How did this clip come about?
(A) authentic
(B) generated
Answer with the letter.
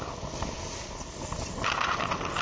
A